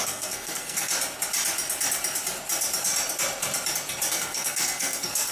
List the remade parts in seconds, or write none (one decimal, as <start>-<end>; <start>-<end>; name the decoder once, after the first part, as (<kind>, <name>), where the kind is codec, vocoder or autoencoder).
0.0-0.9 (codec, SNAC); 4.1-5.3